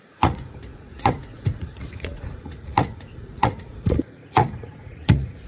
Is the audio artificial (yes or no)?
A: yes